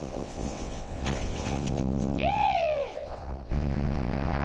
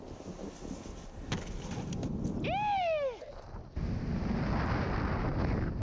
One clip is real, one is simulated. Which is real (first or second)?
second